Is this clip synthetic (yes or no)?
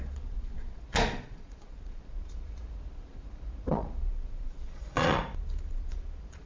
yes